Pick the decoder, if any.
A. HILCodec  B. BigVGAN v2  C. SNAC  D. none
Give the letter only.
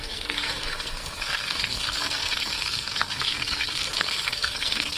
C